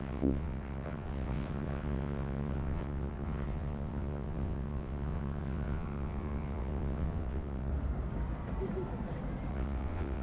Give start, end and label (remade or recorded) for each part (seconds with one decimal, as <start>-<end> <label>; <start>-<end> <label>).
0.0-7.7 remade; 7.7-9.5 recorded; 9.5-10.2 remade